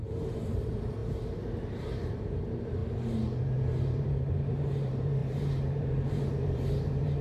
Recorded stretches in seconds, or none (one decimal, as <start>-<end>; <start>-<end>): 2.8-3.4